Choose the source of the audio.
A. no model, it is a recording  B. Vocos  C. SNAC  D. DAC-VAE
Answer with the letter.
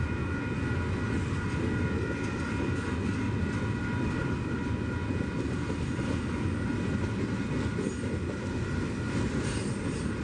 A